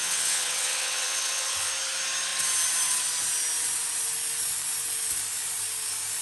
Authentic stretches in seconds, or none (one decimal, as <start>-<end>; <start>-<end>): 1.7-6.2